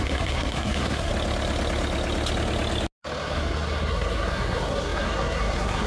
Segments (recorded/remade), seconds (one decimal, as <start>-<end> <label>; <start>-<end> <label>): 0.0-1.1 remade; 1.1-3.2 recorded; 3.2-5.9 remade